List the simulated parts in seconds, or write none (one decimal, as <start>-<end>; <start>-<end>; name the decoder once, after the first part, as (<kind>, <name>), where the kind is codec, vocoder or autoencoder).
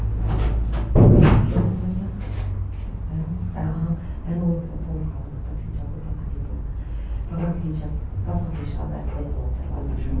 none